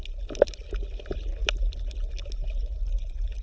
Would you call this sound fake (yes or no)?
no